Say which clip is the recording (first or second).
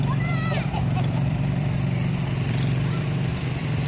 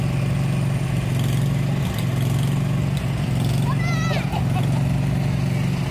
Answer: second